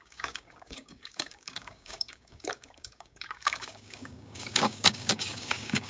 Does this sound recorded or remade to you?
remade